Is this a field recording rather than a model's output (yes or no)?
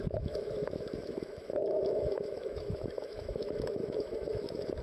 no